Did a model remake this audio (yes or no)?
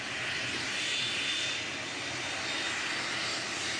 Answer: no